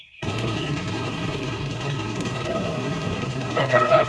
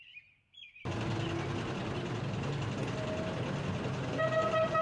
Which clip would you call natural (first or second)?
second